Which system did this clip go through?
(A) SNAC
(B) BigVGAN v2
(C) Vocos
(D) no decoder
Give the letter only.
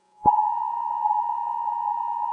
C